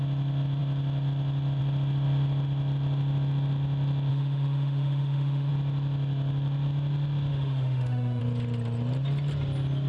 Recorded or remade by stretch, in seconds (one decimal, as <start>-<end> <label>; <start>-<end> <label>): 0.0-4.1 recorded; 4.1-5.5 remade; 5.5-7.3 recorded; 7.3-8.2 remade; 8.2-9.9 recorded